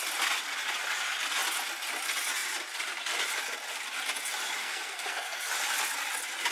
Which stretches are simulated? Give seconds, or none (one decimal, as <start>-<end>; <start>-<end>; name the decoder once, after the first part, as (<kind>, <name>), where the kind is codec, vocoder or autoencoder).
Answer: 4.6-5.5 (codec, SNAC)